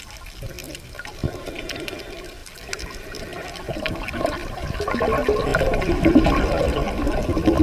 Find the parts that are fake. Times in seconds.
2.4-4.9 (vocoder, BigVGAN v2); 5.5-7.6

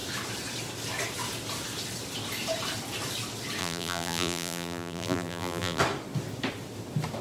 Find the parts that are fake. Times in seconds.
3.6-5.8 (vocoder, BigVGAN v2)

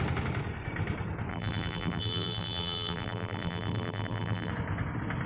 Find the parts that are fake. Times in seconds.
1.3-4.5 (vocoder, BigVGAN v2)

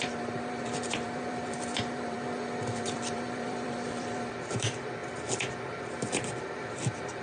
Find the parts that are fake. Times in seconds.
0.0-5.0 (vocoder, BigVGAN v2); 6.4-7.2

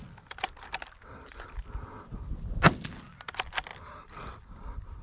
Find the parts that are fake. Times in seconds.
3.7-5.0 (vocoder, BigVGAN v2)